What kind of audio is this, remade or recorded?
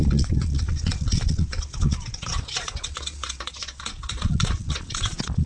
remade